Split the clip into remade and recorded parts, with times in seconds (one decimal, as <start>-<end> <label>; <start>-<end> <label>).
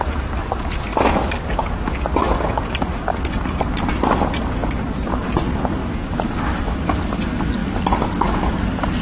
0.0-0.9 remade; 0.9-1.7 recorded; 1.7-7.6 remade; 7.6-8.6 recorded; 8.6-9.0 remade